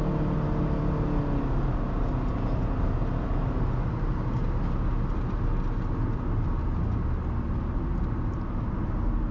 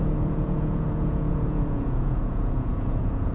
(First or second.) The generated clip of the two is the second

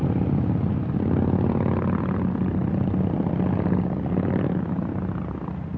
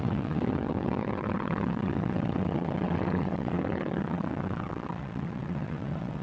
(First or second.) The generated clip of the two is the second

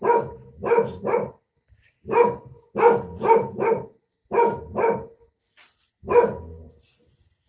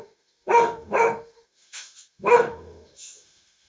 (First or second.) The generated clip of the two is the second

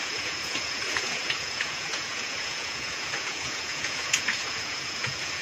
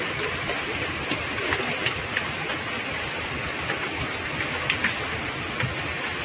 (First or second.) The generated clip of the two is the first